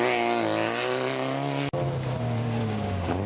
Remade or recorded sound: recorded